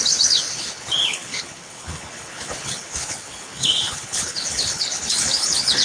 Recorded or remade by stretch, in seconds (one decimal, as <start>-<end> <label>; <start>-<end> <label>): 0.0-5.8 remade